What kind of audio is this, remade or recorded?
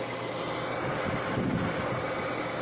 recorded